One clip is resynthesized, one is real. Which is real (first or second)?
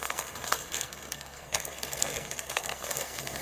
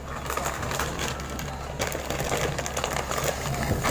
second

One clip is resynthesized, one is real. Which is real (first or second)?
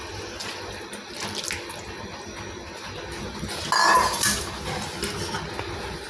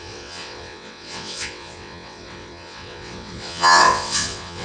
first